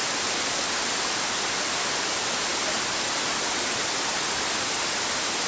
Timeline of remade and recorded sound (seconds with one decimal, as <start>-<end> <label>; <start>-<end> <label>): 0.0-5.5 recorded